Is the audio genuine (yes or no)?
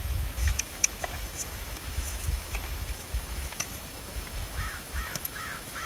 no